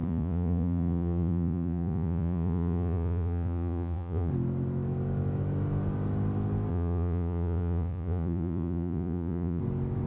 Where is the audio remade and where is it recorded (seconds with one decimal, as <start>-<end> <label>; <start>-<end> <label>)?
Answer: 0.0-4.3 remade; 4.3-6.7 recorded; 6.7-9.6 remade; 9.6-10.1 recorded